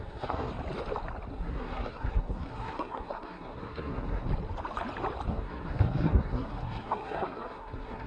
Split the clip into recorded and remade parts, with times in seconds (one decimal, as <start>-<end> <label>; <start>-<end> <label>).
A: 0.0-0.5 remade; 0.5-1.3 recorded; 1.3-4.3 remade; 4.3-5.3 recorded; 5.3-8.1 remade